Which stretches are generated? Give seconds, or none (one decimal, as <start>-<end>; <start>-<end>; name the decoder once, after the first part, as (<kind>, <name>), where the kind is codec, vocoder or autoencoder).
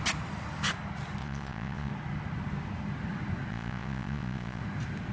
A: 1.2-1.9 (vocoder, Vocos); 3.5-4.6